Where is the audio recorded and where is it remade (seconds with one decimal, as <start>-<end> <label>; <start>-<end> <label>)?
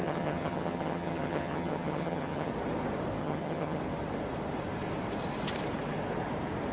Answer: 0.0-2.5 remade; 2.5-3.2 recorded; 3.2-3.8 remade; 3.8-6.7 recorded